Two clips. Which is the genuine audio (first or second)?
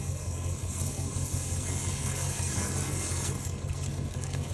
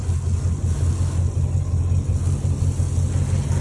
second